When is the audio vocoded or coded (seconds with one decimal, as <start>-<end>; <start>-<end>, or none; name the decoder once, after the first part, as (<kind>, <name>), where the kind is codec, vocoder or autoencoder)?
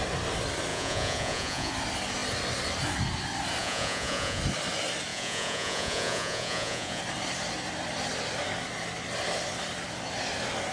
0.7-1.7 (vocoder, Vocos); 3.6-4.4; 5.1-7.0